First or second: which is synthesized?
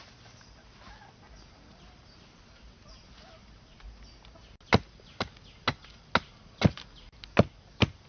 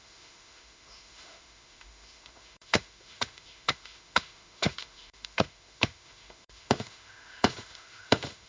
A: second